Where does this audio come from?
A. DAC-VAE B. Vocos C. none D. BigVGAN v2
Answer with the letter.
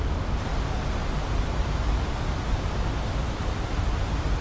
C